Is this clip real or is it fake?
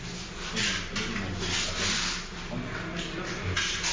real